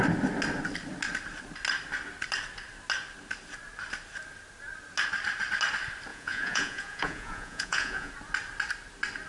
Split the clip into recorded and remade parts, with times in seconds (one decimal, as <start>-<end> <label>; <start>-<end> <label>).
0.0-6.1 recorded; 6.1-8.1 remade; 8.1-9.3 recorded